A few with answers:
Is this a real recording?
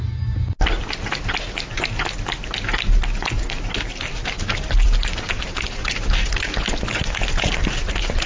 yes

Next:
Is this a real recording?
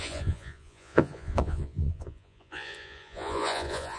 no